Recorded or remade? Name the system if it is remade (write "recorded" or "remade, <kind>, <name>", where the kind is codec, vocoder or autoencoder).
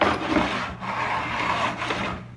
recorded